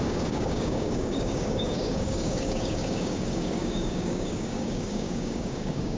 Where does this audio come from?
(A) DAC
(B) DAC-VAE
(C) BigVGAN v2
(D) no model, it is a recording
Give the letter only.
A